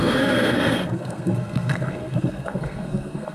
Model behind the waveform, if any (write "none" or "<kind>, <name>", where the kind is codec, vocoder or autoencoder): codec, SNAC